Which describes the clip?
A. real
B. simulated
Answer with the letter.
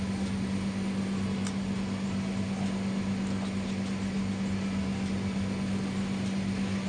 A